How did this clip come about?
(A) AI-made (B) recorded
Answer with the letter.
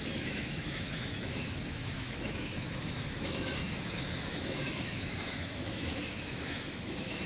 A